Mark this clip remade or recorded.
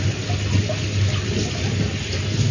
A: recorded